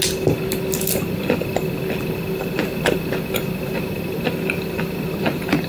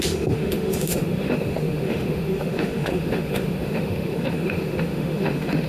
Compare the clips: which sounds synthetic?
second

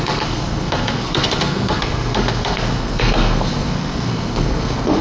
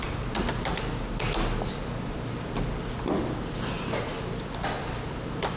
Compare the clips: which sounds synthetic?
first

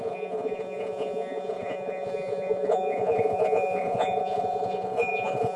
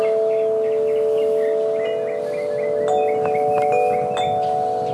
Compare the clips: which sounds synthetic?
first